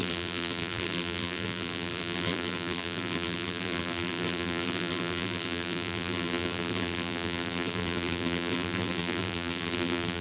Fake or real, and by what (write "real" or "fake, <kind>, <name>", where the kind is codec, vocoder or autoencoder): fake, vocoder, BigVGAN v2